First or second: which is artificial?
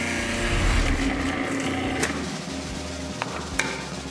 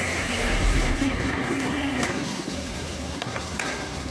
second